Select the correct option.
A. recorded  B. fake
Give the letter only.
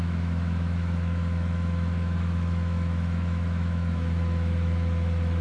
B